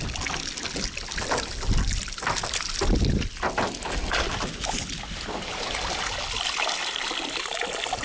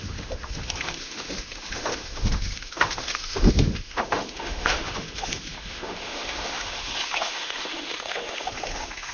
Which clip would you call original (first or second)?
first